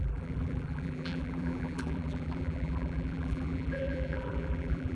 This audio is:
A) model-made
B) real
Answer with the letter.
A